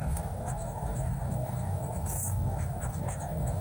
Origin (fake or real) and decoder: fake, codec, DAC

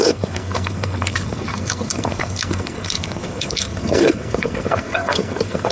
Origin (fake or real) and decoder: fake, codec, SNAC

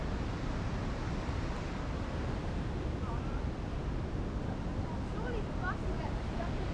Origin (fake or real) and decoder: real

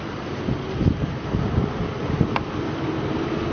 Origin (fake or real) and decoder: real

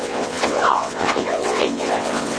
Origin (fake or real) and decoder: fake, vocoder, WaveNeXt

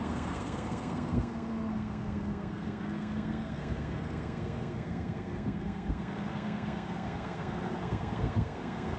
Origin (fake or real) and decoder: fake, codec, SNAC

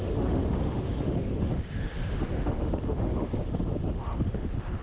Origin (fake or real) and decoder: fake, autoencoder, DAC-VAE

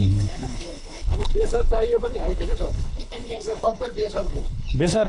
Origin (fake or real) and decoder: fake, codec, HILCodec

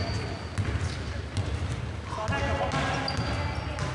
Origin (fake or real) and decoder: real